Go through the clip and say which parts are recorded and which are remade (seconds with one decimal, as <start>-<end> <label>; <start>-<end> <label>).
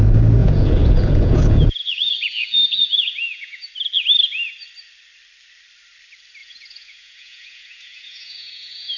0.0-0.4 recorded; 0.4-3.6 remade; 3.6-6.4 recorded; 6.4-9.0 remade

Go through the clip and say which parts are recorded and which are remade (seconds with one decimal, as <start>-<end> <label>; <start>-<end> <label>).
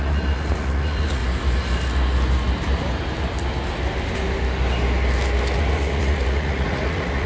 0.0-1.2 remade; 1.2-5.6 recorded; 5.6-7.3 remade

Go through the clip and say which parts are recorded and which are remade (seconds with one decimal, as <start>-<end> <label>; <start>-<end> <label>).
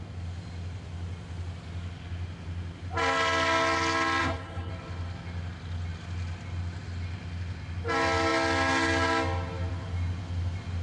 0.0-4.2 recorded; 4.2-4.7 remade; 4.7-10.8 recorded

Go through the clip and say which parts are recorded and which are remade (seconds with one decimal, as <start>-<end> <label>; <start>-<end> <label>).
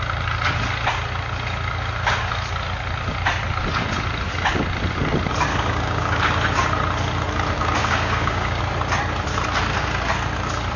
0.0-5.5 recorded; 5.5-6.2 remade; 6.2-7.8 recorded; 7.8-8.6 remade; 8.6-10.8 recorded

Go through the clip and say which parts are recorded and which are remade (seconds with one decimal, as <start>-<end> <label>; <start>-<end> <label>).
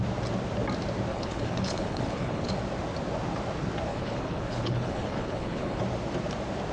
0.0-1.1 recorded; 1.1-2.5 remade; 2.5-3.9 recorded; 3.9-5.8 remade; 5.8-6.7 recorded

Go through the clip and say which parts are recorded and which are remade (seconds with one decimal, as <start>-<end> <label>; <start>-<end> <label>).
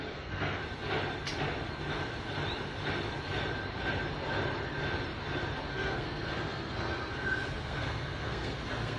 0.0-0.6 remade; 0.6-5.7 recorded; 5.7-9.0 remade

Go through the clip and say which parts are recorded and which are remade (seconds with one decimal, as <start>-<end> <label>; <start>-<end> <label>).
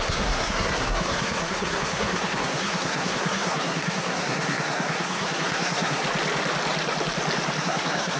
0.0-6.0 remade; 6.0-7.6 recorded; 7.6-8.2 remade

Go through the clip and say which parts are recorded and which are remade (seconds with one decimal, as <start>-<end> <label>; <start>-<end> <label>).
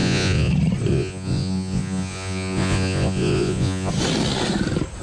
0.0-0.5 remade; 0.5-0.9 recorded; 0.9-3.9 remade; 3.9-5.0 recorded